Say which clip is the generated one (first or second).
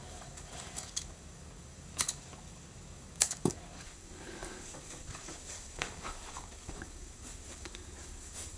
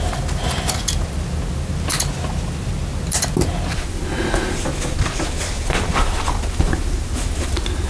first